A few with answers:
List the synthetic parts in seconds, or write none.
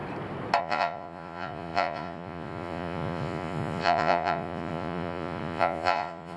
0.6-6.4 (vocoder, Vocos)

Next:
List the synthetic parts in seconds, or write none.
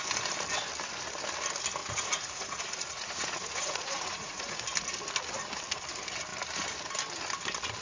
1.8-4.6 (vocoder, Vocos)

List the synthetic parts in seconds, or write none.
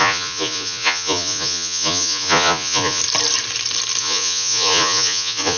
0.0-3.0 (vocoder, Vocos); 4.0-5.6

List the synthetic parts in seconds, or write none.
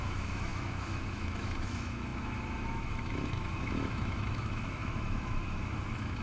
0.0-6.2 (autoencoder, DAC-VAE)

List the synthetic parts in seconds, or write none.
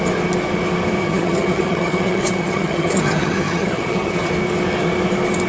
1.0-4.3 (vocoder, HiFi-GAN)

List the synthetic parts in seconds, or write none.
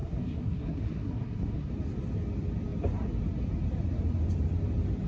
0.0-1.7 (codec, SNAC)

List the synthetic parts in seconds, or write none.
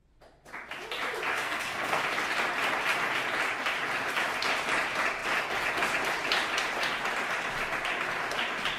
1.3-2.0 (codec, SNAC)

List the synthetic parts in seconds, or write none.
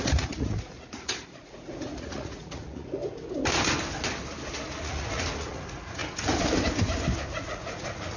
0.0-3.0 (vocoder, Vocos); 4.8-6.0; 7.4-8.2